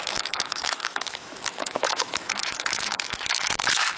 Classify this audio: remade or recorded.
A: remade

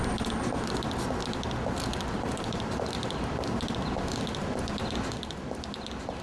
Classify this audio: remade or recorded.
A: recorded